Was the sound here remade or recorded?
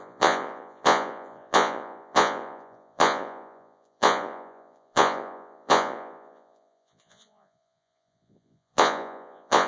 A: remade